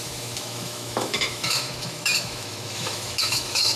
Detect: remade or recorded remade